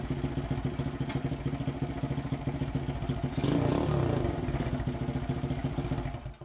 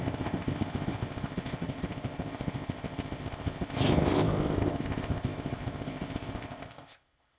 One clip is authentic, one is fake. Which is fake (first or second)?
second